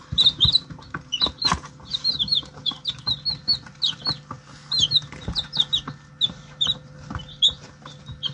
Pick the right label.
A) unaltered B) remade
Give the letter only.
A